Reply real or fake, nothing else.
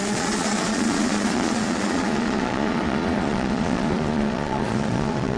fake